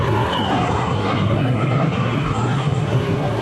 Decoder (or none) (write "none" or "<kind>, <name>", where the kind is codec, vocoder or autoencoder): codec, SNAC